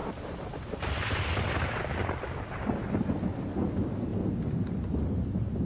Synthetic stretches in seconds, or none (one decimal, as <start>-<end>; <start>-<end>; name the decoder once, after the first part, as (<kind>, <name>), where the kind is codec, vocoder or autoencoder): 0.0-0.6 (vocoder, BigVGAN v2)